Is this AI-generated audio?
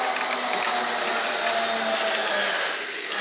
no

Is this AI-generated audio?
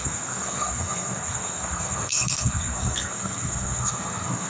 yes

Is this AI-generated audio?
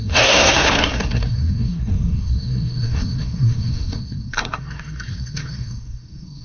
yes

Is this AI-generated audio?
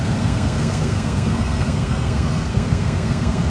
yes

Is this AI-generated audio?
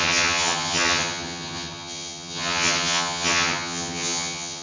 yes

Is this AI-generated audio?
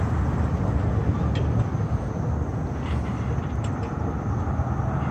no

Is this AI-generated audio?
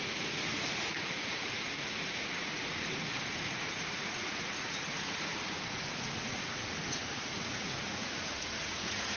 yes